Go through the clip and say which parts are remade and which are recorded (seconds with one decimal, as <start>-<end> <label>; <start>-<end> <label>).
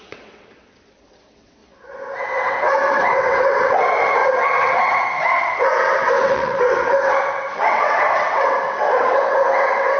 0.0-1.6 remade; 1.6-2.2 recorded; 2.2-10.0 remade